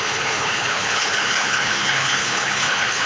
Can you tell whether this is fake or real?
fake